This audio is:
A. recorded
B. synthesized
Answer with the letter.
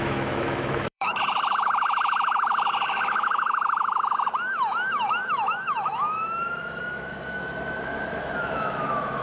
B